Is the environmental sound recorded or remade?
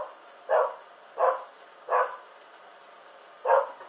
recorded